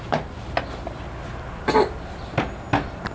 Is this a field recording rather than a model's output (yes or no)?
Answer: yes